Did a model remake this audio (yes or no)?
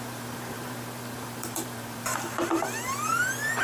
yes